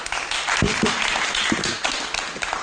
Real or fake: fake